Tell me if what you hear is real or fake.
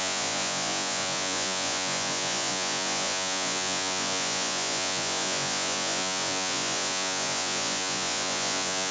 fake